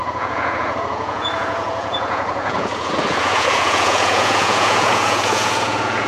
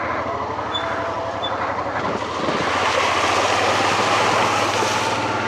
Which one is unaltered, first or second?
second